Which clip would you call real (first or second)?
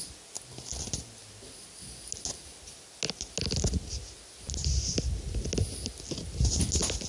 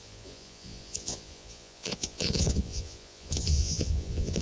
first